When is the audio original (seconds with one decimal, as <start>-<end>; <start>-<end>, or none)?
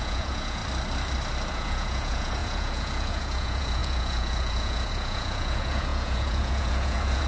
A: 0.6-1.5